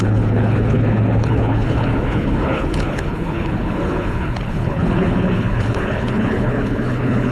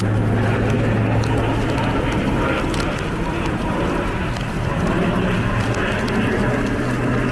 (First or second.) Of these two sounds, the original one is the second